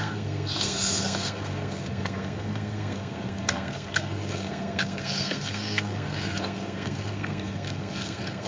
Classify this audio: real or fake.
fake